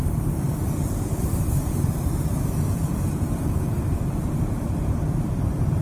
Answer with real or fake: fake